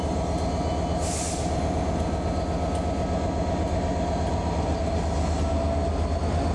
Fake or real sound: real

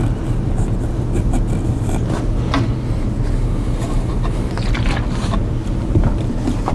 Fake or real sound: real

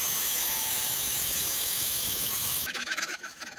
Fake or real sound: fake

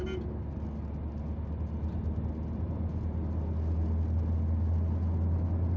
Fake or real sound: real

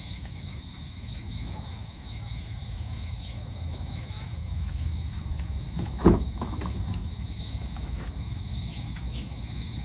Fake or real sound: fake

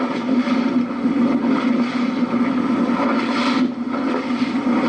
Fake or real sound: real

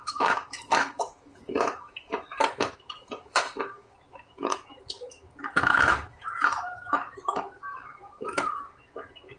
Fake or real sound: fake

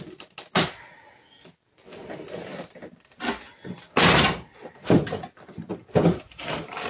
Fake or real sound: real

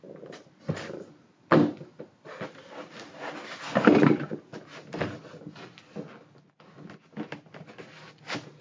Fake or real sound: real